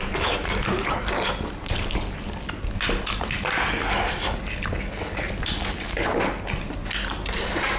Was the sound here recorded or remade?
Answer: recorded